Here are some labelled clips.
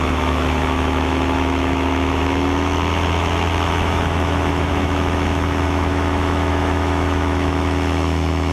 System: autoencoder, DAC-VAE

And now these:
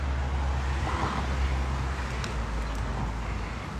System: none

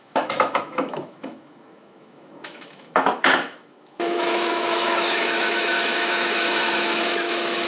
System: autoencoder, DAC-VAE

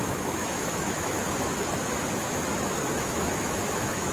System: autoencoder, DAC-VAE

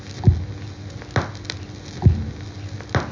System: none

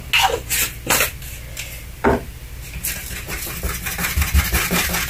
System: none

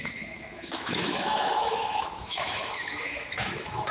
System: autoencoder, DAC-VAE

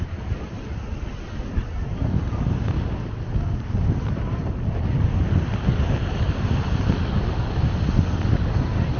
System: none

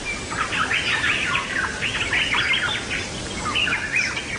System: none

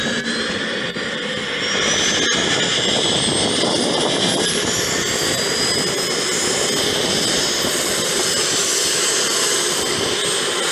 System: none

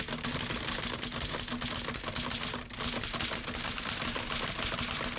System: none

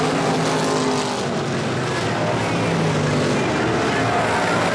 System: none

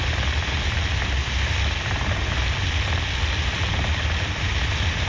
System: none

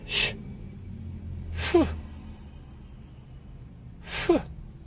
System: none